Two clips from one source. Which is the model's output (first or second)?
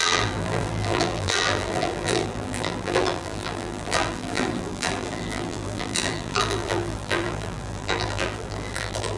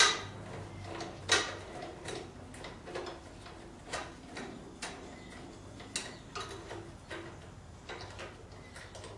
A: first